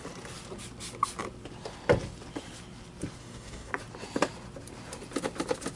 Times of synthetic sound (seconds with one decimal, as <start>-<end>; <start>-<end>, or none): 3.2-3.7